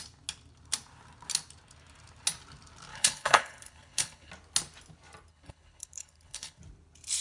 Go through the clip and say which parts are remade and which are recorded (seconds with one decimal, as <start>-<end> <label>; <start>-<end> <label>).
0.0-2.9 recorded; 2.9-4.3 remade; 4.3-5.3 recorded; 5.3-6.6 remade; 6.6-7.2 recorded